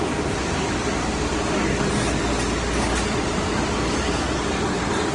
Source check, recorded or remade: recorded